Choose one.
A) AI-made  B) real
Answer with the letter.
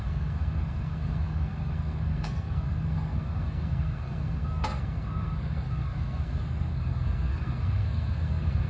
A